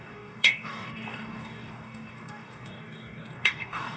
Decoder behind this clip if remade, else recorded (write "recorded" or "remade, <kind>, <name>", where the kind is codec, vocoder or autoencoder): remade, codec, DAC